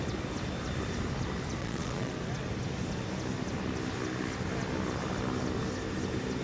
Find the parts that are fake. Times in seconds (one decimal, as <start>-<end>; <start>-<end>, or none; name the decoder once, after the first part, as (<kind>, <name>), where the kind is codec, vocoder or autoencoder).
1.6-2.1 (vocoder, Vocos)